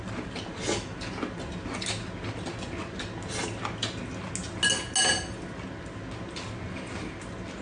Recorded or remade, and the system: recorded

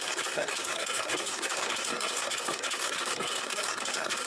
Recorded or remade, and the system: remade, codec, SNAC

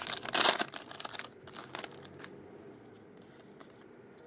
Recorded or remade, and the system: recorded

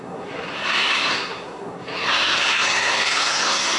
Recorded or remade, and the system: remade, codec, SNAC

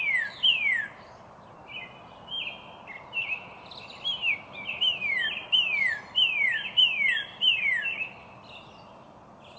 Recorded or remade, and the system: recorded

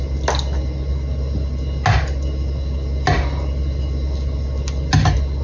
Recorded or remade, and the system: recorded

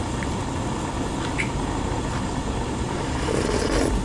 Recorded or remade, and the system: recorded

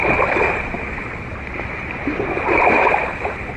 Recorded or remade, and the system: recorded